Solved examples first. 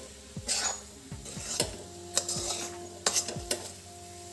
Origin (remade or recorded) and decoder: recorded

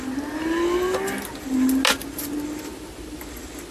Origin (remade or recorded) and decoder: recorded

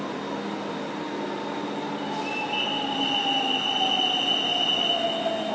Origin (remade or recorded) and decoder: recorded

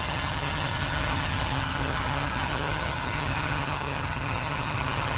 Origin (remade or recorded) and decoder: remade, vocoder, HiFi-GAN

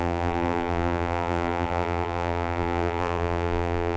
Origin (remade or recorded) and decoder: remade, vocoder, BigVGAN v2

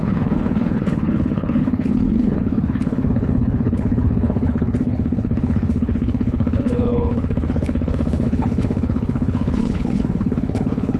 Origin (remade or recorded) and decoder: remade, codec, HILCodec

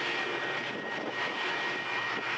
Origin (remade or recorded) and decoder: recorded